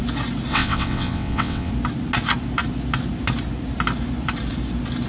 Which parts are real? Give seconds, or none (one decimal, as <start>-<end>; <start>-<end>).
0.0-0.5; 1.7-5.1